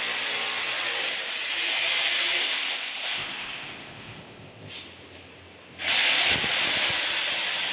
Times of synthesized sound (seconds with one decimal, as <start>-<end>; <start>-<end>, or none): 2.4-4.7